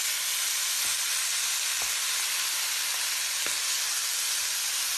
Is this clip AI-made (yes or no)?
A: no